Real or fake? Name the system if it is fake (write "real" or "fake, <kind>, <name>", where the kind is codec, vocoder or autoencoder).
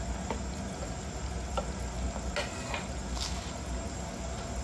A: real